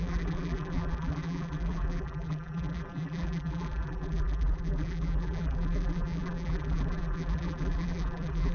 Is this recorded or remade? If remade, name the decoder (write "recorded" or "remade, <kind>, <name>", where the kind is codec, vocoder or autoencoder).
remade, vocoder, BigVGAN v2